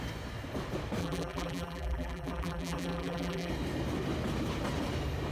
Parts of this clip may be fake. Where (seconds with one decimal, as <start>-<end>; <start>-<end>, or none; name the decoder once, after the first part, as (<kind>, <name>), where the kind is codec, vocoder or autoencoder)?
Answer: 1.0-3.5 (vocoder, BigVGAN v2)